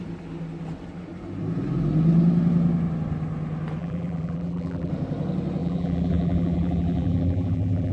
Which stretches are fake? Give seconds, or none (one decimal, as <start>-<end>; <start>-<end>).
3.8-4.9; 5.6-7.9